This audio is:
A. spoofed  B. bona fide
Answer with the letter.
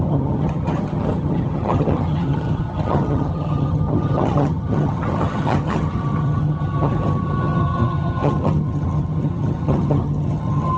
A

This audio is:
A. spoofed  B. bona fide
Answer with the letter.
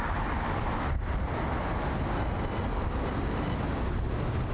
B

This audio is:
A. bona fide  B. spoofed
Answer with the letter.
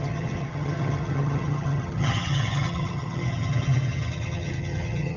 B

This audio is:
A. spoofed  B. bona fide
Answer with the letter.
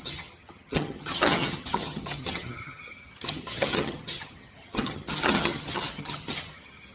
A